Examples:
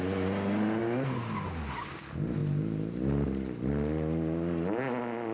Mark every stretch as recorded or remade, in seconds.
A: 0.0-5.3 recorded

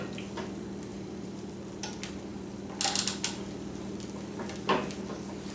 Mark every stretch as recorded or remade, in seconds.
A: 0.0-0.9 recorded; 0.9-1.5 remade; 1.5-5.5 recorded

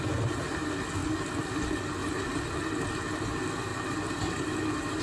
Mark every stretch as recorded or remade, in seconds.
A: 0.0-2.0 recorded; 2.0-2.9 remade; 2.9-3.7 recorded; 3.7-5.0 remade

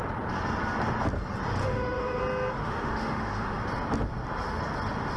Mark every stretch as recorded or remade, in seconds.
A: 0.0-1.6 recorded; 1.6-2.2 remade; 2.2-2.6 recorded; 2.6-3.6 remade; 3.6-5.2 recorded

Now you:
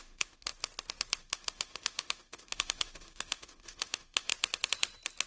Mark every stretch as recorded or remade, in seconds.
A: 0.0-0.5 remade; 0.5-1.2 recorded; 1.2-4.3 remade; 4.3-5.3 recorded

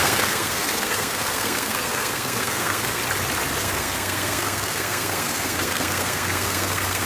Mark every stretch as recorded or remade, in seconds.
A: 0.0-3.0 remade; 3.0-3.6 recorded; 3.6-7.1 remade

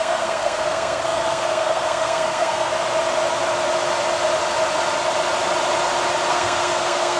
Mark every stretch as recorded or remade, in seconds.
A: 0.0-2.7 remade; 2.7-6.3 recorded; 6.3-7.2 remade